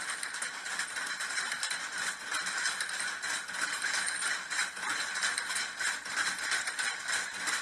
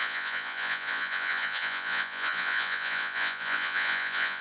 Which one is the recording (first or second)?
first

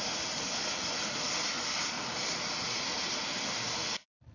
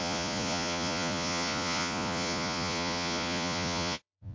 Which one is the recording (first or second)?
first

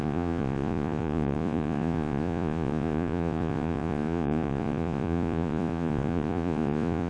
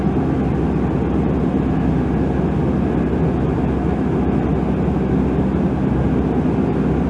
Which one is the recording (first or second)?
second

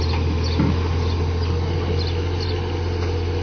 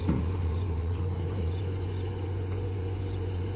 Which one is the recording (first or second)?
first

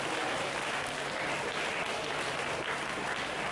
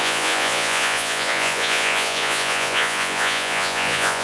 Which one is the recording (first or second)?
first